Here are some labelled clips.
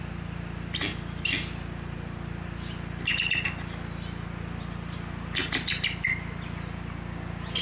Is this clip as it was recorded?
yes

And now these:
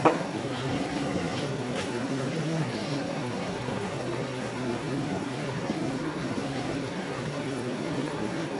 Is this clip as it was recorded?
no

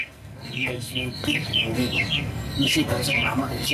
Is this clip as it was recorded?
no